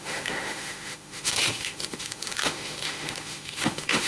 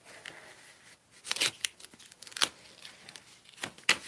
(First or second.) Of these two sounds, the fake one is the first